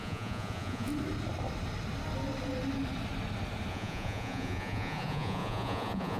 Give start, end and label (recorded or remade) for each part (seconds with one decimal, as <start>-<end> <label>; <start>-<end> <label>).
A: 0.0-0.9 remade; 0.9-3.7 recorded; 3.7-6.2 remade